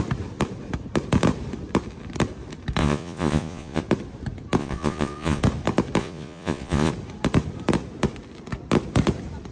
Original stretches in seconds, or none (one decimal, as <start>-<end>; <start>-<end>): 0.0-2.8; 3.8-4.6; 5.4-6.0; 6.9-9.5

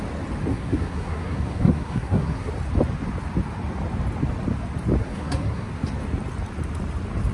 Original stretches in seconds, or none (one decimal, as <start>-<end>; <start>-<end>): 0.0-0.5; 2.5-5.0; 5.7-7.3

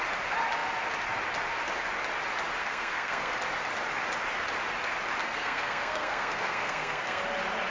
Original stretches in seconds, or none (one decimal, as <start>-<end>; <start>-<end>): 0.0-2.6; 3.3-5.2; 7.2-7.7

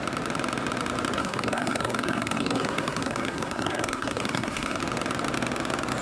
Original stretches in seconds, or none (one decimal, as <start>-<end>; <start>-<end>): 0.0-1.2; 4.8-6.0

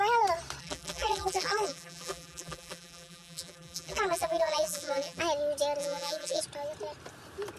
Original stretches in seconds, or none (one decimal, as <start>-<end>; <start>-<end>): 0.0-0.6; 5.2-5.8; 6.4-7.6

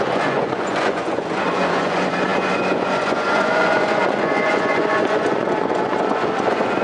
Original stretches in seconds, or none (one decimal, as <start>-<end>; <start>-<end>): none

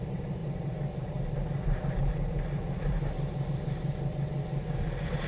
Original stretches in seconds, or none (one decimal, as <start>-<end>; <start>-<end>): 0.0-0.4; 3.5-5.3